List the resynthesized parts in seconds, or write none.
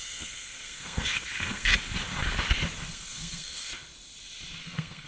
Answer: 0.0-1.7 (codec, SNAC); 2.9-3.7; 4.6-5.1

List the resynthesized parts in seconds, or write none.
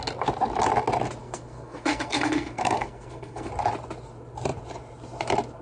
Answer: 1.2-3.5 (codec, SNAC)